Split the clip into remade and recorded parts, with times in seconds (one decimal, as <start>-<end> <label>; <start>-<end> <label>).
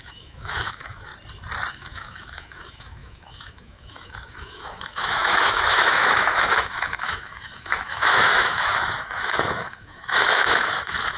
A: 0.0-1.1 remade; 1.1-1.7 recorded; 1.7-11.2 remade